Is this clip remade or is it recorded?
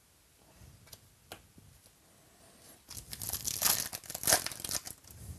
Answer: recorded